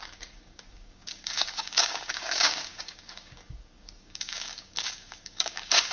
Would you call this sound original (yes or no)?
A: no